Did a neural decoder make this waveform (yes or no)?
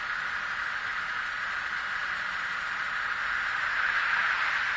no